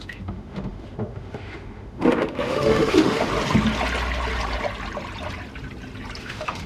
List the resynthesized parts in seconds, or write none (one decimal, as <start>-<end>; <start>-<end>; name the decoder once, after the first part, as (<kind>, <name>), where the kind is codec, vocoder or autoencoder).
0.0-3.3 (autoencoder, DAC-VAE); 6.2-6.7